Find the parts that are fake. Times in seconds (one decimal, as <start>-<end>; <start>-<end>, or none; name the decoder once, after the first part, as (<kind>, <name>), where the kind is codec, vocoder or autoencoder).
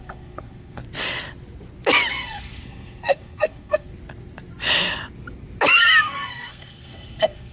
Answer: 0.0-0.8 (codec, SNAC); 2.1-3.9; 6.0-7.5